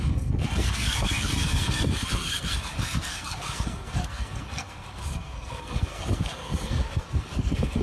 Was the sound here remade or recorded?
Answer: remade